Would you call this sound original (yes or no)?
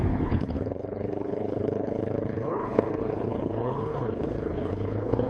no